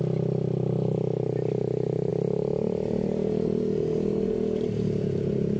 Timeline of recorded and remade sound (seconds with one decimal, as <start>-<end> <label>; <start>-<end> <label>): 0.0-2.1 recorded; 2.1-5.6 remade